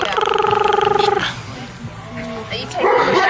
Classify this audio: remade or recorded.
recorded